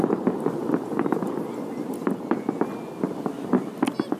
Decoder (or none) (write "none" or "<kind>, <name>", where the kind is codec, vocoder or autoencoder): none